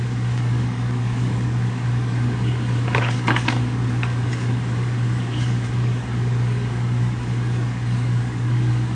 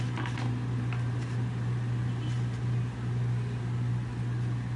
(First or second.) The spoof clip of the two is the first